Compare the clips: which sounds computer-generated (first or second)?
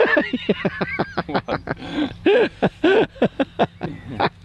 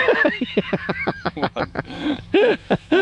second